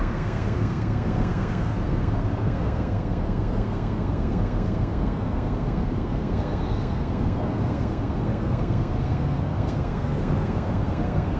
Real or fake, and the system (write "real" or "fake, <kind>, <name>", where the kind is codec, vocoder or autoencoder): fake, codec, SNAC